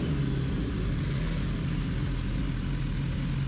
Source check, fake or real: real